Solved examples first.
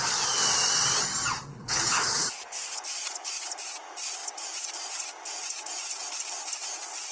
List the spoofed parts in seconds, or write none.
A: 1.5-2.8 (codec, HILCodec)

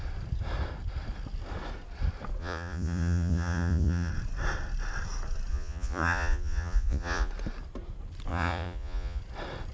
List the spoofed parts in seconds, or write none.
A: 2.4-4.1 (vocoder, Vocos); 5.5-7.3; 8.3-9.2

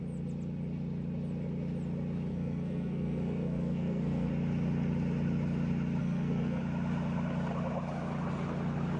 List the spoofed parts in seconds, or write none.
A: 2.3-4.3 (codec, SNAC); 6.0-6.6

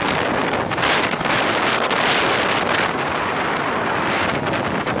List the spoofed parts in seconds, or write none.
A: none

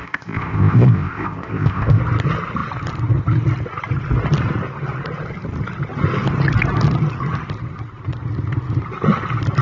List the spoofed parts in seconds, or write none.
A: 0.0-2.0 (codec, ZipCodec)

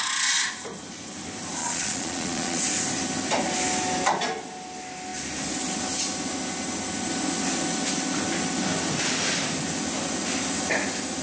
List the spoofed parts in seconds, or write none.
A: 1.6-2.6 (vocoder, Vocos)

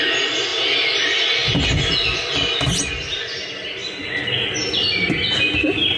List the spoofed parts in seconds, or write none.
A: none